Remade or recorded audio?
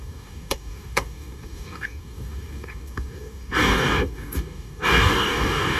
remade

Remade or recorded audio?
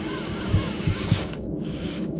remade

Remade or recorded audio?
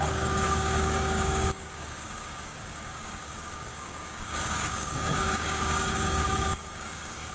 remade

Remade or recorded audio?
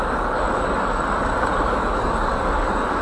remade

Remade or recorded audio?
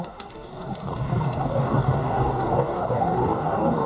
remade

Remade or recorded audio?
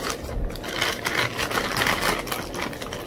recorded